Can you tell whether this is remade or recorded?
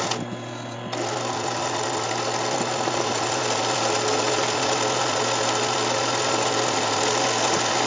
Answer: recorded